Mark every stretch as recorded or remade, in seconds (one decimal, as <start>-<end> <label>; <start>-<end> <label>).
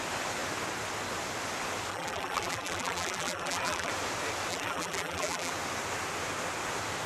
0.0-1.9 recorded; 1.9-3.9 remade; 3.9-4.5 recorded; 4.5-5.5 remade; 5.5-7.1 recorded